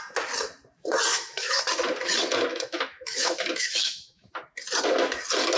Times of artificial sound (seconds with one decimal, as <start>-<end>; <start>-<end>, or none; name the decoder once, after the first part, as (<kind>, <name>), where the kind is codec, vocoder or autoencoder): 1.1-1.6 (autoencoder, DAC-VAE); 2.5-4.3